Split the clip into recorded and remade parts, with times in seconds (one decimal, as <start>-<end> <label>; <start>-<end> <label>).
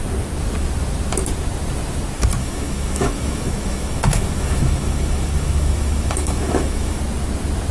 0.0-2.4 recorded; 2.4-7.0 remade; 7.0-7.7 recorded